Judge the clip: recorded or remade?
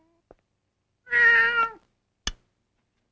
recorded